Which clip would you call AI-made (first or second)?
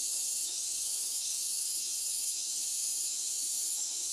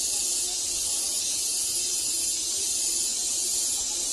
first